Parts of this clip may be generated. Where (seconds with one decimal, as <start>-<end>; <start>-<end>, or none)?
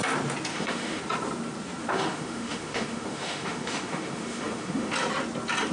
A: 0.5-1.0; 1.8-4.9